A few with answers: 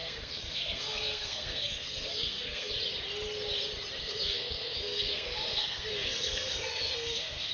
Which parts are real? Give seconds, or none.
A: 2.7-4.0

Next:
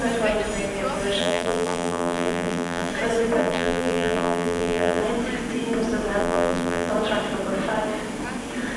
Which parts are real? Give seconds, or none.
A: 0.0-1.2; 2.9-3.4; 5.0-6.2; 6.9-8.8